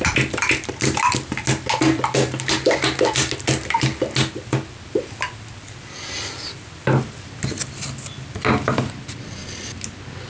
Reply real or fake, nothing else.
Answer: real